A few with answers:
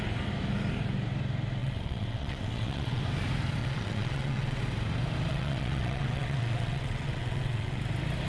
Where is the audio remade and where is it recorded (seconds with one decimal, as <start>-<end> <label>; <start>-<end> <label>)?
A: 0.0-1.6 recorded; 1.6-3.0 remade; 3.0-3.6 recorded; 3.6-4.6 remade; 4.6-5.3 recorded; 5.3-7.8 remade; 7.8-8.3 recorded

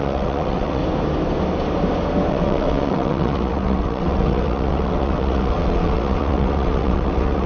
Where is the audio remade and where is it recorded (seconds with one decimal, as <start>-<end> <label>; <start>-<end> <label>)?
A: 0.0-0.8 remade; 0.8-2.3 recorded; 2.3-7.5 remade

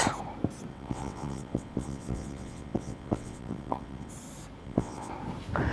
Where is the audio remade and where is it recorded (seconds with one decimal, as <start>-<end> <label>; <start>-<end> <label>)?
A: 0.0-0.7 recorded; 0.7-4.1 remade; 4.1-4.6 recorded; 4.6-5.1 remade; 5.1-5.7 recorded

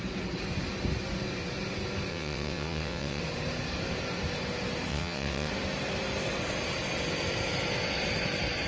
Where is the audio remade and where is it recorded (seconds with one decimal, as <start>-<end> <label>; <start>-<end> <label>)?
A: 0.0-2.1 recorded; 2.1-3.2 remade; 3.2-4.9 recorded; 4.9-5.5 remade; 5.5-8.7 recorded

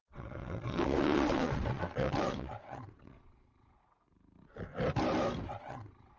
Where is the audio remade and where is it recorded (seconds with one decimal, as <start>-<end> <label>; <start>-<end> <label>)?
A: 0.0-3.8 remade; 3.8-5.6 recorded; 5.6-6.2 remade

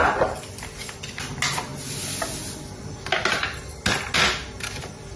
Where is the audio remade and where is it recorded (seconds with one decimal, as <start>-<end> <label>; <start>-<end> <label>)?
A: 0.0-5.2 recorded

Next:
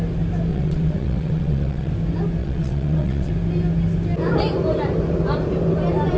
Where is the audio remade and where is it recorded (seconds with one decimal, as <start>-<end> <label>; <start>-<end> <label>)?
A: 0.0-0.5 recorded; 0.5-1.9 remade; 1.9-2.4 recorded; 2.4-3.3 remade; 3.3-6.2 recorded

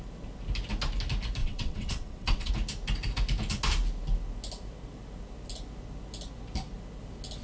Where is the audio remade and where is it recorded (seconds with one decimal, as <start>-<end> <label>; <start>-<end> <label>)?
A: 0.0-1.4 recorded; 1.4-2.5 remade; 2.5-7.4 recorded